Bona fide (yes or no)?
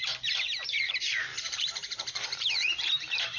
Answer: no